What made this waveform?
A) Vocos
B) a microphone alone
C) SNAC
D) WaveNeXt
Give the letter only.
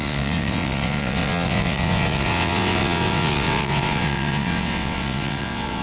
D